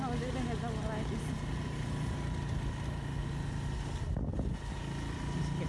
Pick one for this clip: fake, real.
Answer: real